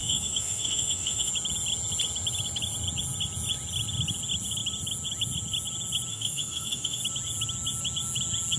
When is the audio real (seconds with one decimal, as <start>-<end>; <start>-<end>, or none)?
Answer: 1.3-6.1; 7.0-8.6